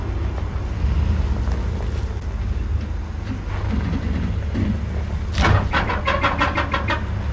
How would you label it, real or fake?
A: real